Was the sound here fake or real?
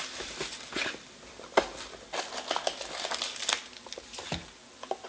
real